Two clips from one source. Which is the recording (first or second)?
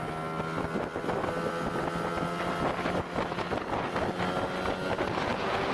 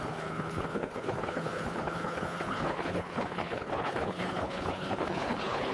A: first